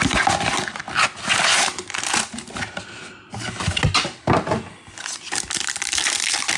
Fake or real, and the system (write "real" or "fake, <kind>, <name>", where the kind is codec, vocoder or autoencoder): real